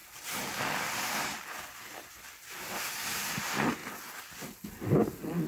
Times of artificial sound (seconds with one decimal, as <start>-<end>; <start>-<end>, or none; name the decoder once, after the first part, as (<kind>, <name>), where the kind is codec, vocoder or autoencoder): 0.0-3.3 (vocoder, BigVGAN v2)